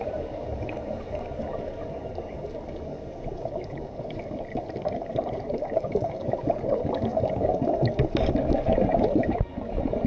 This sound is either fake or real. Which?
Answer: fake